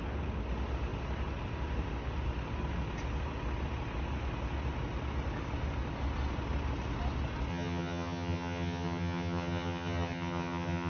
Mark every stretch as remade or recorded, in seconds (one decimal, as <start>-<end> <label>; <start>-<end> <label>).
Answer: 0.0-7.5 recorded; 7.5-10.9 remade